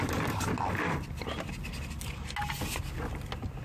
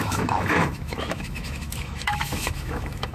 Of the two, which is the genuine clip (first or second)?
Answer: first